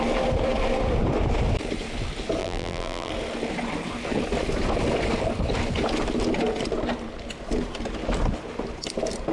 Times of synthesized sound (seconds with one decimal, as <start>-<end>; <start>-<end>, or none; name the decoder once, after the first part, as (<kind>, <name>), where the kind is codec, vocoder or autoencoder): 2.4-3.1 (vocoder, BigVGAN v2)